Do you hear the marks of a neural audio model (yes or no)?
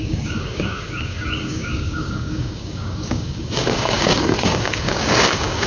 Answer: yes